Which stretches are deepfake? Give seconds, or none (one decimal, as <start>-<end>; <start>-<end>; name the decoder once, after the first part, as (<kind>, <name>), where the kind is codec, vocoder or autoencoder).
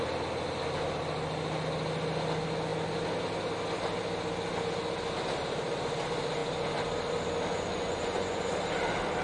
7.5-8.5 (vocoder, Vocos)